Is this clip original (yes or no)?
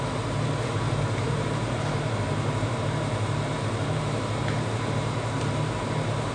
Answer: no